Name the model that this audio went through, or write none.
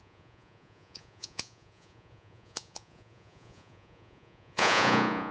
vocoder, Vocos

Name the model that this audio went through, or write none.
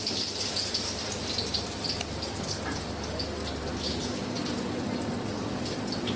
none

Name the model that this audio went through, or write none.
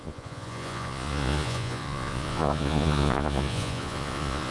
vocoder, Vocos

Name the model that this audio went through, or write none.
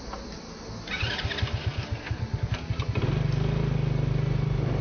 none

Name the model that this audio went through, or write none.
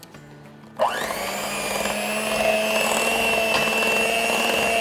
none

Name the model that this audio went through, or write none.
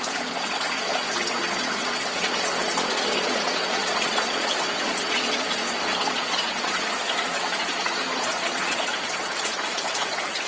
vocoder, Vocos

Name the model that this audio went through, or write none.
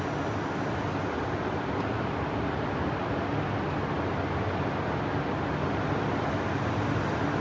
none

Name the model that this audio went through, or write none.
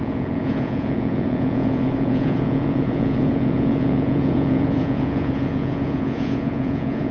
vocoder, Vocos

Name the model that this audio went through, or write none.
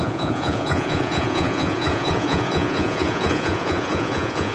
vocoder, Vocos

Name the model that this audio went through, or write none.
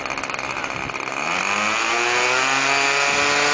none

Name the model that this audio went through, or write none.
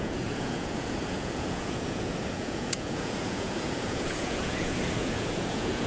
vocoder, Vocos